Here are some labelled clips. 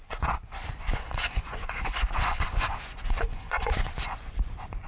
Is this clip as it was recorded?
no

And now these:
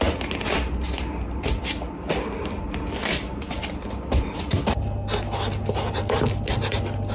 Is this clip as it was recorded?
yes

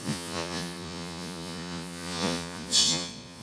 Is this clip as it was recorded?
no